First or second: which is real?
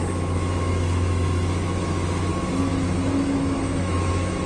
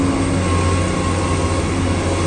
second